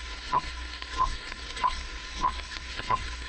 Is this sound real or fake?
fake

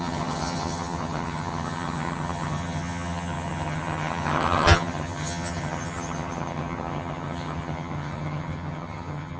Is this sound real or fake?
fake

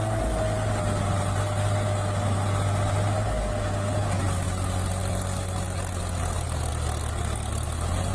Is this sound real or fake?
real